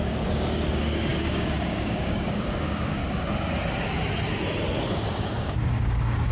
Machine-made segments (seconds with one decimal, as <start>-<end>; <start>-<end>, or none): 0.0-3.0; 4.9-6.3